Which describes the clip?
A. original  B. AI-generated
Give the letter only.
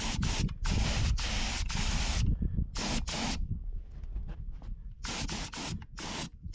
A